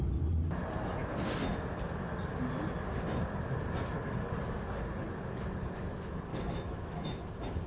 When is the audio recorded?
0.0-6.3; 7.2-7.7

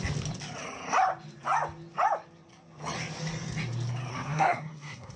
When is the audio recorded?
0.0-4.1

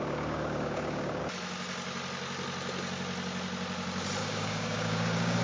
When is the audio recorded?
1.2-4.2

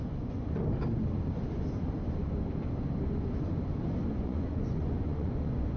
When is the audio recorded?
0.6-4.1

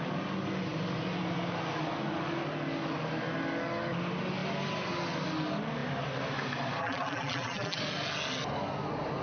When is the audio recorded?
0.0-6.8; 7.8-9.2

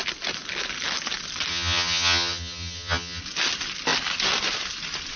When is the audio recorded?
0.0-1.5; 3.2-5.2

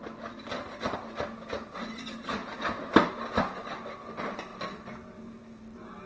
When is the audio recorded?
0.0-2.4; 2.9-6.1